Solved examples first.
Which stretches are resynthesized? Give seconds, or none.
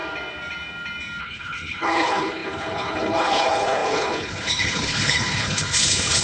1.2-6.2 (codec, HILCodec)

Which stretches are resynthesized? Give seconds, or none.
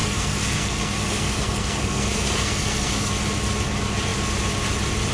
0.0-3.1 (codec, SNAC)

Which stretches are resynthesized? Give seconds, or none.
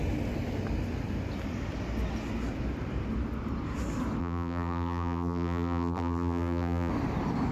4.2-6.9 (vocoder, BigVGAN v2)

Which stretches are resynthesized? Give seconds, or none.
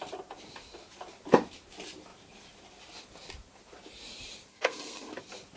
4.5-5.1 (codec, SNAC)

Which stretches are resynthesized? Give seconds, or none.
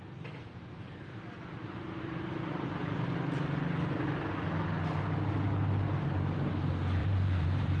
1.6-2.4 (vocoder, BigVGAN v2); 7.0-7.8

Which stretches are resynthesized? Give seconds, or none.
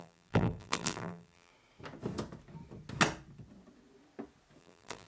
0.0-1.5 (vocoder, BigVGAN v2); 4.6-5.1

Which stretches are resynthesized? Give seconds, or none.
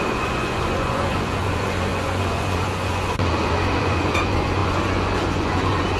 0.0-6.0 (vocoder, Vocos)